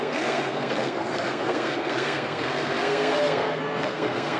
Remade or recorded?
remade